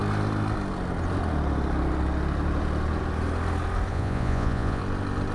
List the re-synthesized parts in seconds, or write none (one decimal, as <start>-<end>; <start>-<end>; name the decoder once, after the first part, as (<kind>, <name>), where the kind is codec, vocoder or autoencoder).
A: 3.9-4.8 (vocoder, Vocos)